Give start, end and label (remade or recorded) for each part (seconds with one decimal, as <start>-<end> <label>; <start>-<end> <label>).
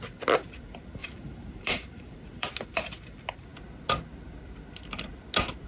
0.0-1.0 recorded; 1.0-2.5 remade; 2.5-5.7 recorded